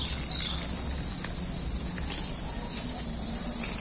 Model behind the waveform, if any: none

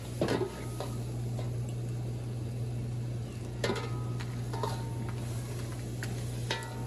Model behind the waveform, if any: none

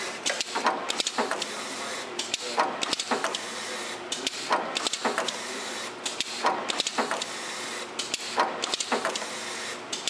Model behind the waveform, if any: none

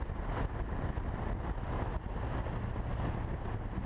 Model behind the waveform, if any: none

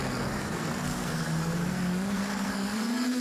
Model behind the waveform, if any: codec, SNAC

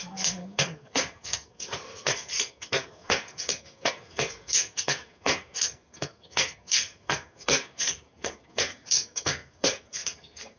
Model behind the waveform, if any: codec, SNAC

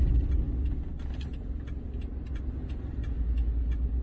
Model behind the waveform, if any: none